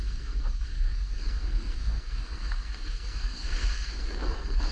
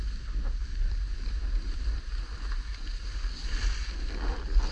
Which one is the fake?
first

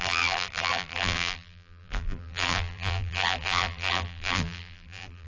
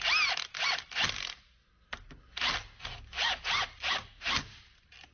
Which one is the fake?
first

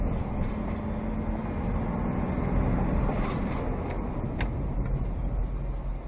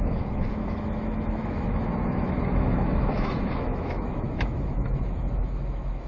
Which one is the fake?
second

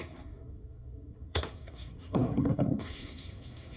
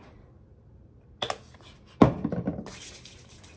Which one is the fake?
first